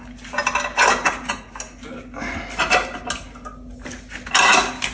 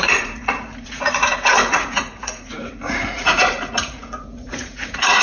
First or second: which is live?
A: first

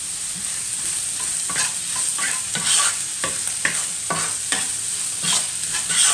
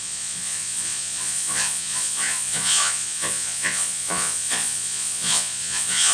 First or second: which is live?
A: first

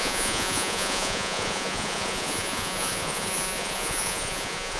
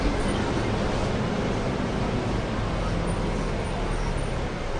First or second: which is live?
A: second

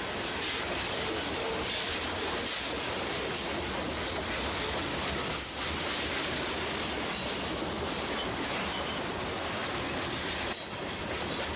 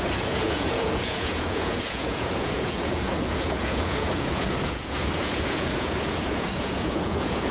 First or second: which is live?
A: first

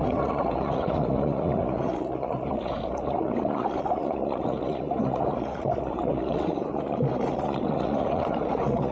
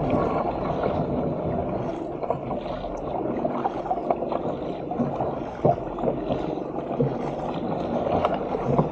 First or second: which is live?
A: second